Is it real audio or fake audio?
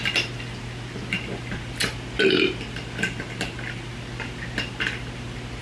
real